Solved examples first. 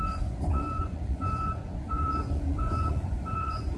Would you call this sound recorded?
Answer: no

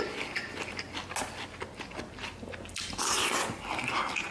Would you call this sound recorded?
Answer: yes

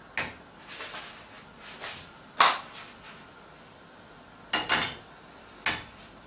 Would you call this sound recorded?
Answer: yes